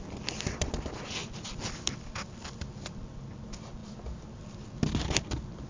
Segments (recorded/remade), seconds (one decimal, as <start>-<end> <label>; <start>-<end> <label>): 0.0-3.8 remade; 3.8-5.7 recorded